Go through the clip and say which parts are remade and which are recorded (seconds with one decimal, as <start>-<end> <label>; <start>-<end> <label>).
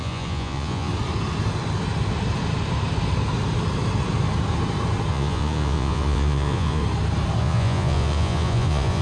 0.0-0.9 remade; 0.9-5.1 recorded; 5.1-6.8 remade; 6.8-7.4 recorded; 7.4-9.0 remade